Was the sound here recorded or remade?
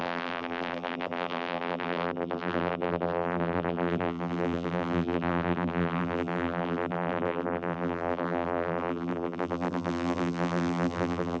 remade